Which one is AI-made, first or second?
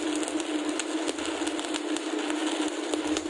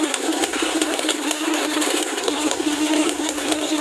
second